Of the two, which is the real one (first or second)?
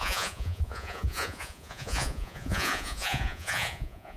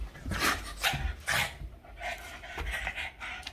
second